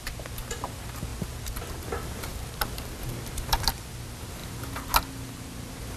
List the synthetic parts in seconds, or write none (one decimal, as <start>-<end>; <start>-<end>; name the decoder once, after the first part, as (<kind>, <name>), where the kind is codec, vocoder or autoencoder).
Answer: none